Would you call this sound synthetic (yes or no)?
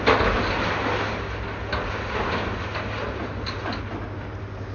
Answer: no